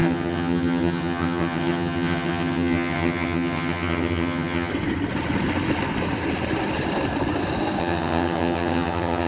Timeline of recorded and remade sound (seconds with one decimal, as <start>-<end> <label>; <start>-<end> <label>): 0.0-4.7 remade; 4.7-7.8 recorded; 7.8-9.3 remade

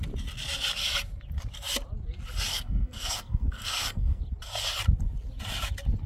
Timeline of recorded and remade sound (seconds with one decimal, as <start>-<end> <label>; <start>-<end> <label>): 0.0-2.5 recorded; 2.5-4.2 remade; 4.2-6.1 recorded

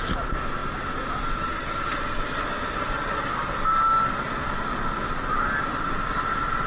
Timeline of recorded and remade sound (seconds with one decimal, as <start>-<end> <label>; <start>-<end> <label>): 0.0-6.7 recorded

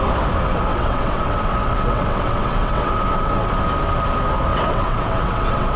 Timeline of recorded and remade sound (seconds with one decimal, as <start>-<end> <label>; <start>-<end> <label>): 0.0-0.7 recorded; 0.7-3.5 remade; 3.5-4.5 recorded; 4.5-5.8 remade

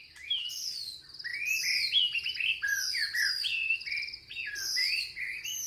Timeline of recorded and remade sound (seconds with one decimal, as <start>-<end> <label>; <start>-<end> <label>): 0.0-5.7 recorded

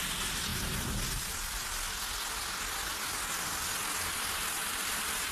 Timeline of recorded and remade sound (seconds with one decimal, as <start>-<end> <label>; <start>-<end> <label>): 0.0-5.3 recorded

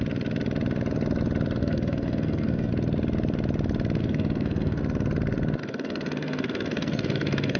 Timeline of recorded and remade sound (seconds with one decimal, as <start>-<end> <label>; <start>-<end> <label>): 0.0-1.6 recorded; 1.6-2.7 remade; 2.7-4.0 recorded; 4.0-4.8 remade; 4.8-5.6 recorded; 5.6-7.6 remade